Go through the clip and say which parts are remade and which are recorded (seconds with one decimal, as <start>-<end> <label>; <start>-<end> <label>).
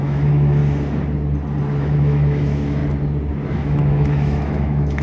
0.0-0.6 remade; 0.6-1.8 recorded; 1.8-2.8 remade; 2.8-3.5 recorded; 3.5-5.0 remade